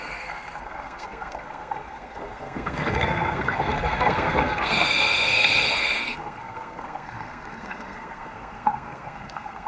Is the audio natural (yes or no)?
no